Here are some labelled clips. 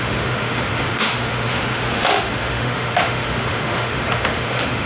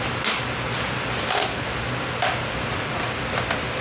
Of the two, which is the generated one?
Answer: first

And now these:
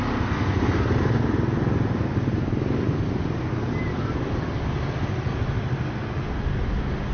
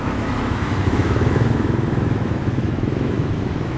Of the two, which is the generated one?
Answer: second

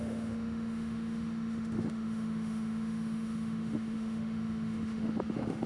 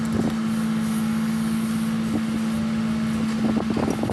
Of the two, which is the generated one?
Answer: first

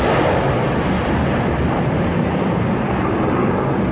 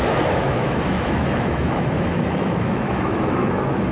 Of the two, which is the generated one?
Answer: second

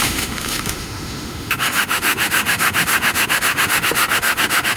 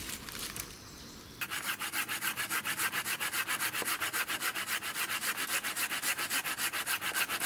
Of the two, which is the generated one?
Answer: first